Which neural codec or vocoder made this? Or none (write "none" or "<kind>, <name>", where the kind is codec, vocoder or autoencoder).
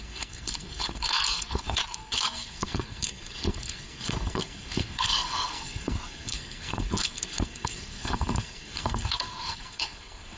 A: codec, SNAC